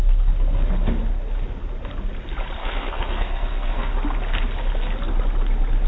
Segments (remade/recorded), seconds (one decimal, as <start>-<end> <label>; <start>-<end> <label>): 0.0-2.6 recorded; 2.6-3.9 remade; 3.9-5.9 recorded